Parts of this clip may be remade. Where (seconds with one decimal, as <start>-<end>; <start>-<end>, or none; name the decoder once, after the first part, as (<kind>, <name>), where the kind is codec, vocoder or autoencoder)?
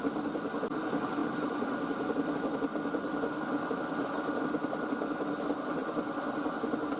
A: none